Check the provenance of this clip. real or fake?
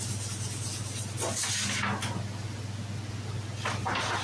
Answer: real